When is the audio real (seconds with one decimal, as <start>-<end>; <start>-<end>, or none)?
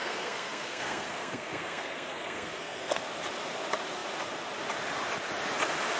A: 3.0-6.0